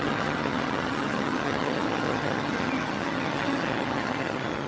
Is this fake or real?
fake